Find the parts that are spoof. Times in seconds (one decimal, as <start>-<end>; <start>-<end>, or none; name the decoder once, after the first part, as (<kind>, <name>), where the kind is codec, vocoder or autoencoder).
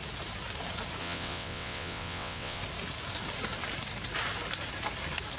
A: 1.0-2.6 (vocoder, WaveNeXt)